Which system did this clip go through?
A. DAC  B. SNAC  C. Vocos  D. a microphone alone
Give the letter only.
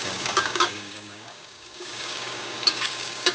A